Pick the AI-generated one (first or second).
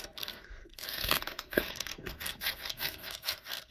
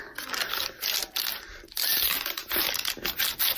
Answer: first